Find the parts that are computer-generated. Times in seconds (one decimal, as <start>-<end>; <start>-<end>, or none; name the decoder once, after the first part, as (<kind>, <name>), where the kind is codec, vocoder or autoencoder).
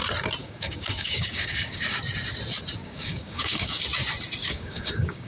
0.4-2.0 (codec, DAC); 2.8-3.8; 4.4-5.3